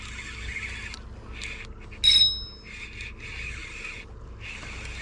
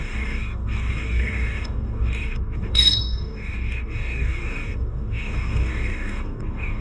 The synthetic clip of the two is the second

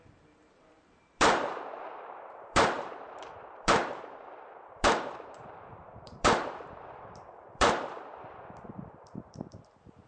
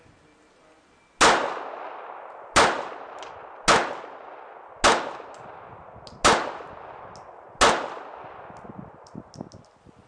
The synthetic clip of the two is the first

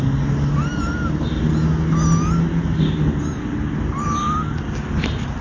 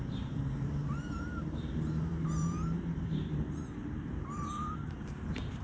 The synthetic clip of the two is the second